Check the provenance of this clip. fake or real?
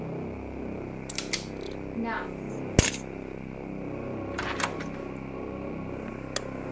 real